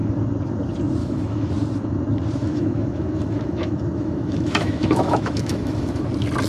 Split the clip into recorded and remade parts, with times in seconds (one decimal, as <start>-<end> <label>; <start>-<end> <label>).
0.0-1.0 recorded; 1.0-1.5 remade; 1.5-2.4 recorded; 2.4-6.0 remade; 6.0-6.5 recorded